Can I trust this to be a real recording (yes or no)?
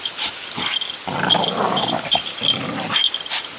no